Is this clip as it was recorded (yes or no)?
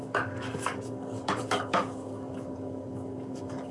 no